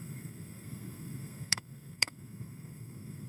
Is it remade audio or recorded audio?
remade